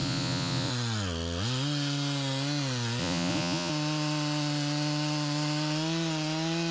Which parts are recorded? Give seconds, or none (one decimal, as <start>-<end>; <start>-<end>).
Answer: 0.7-3.0; 3.7-6.7